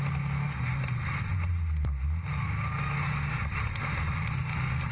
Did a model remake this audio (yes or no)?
no